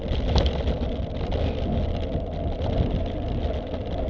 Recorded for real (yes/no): yes